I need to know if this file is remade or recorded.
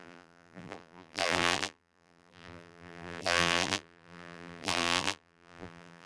remade